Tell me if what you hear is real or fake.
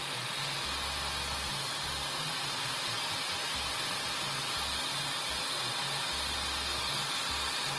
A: real